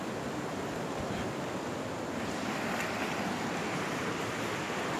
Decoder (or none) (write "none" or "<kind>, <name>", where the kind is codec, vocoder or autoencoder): none